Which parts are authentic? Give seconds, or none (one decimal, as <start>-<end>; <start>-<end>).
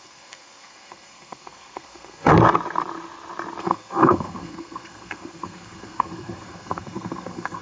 2.3-3.6